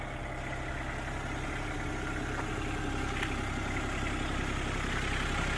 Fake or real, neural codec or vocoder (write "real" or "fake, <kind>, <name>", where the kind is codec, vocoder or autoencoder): real